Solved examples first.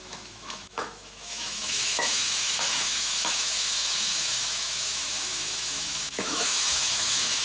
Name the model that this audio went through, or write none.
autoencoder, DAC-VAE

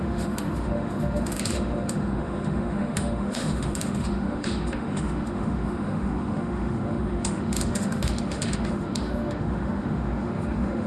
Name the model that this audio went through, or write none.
autoencoder, DAC-VAE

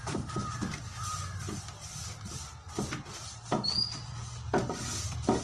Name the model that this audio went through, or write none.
none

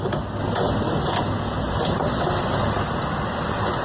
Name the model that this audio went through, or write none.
none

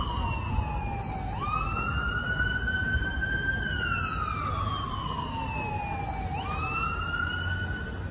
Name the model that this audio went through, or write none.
none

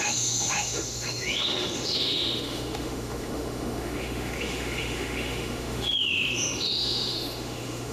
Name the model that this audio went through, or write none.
autoencoder, DAC-VAE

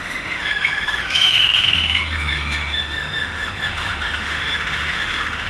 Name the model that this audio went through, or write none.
autoencoder, DAC-VAE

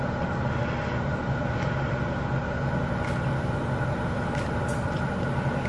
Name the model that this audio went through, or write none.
none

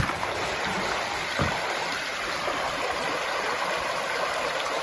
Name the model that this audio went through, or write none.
none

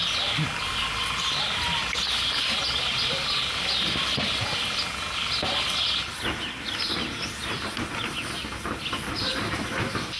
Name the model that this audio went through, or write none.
none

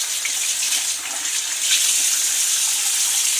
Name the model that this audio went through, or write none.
none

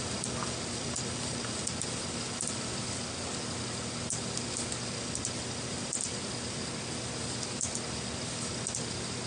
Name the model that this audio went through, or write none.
none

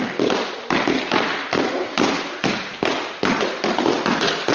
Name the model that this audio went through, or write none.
none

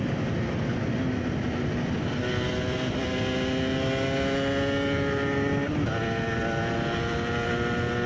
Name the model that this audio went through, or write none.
none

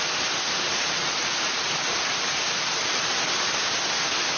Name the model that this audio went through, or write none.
none